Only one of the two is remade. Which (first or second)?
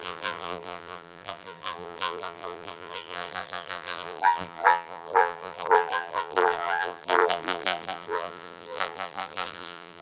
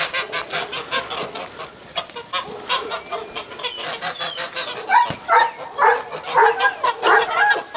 first